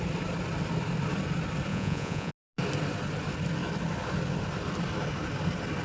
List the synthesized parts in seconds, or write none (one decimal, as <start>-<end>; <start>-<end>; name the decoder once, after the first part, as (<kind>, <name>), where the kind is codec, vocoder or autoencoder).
1.7-2.3 (vocoder, Vocos)